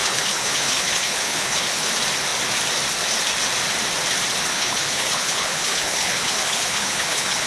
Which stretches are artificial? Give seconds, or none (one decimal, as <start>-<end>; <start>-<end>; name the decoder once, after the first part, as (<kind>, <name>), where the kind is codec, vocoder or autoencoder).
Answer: 0.0-1.9 (codec, HILCodec); 4.5-7.5